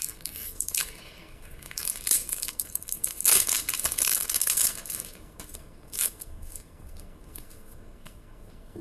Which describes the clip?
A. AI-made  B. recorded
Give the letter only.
A